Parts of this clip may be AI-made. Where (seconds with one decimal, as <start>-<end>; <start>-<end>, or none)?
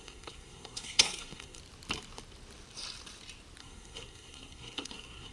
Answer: 0.0-1.6; 3.6-5.3